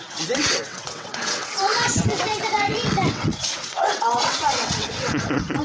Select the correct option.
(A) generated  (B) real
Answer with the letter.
A